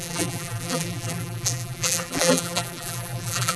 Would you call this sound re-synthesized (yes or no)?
yes